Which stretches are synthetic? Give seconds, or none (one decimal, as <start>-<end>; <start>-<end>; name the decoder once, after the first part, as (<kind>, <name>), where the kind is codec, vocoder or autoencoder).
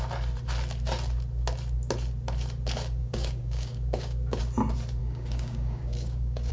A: 3.0-4.4 (codec, DAC); 5.0-6.5